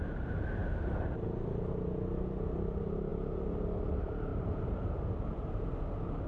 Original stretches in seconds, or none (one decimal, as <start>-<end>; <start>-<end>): 0.0-6.3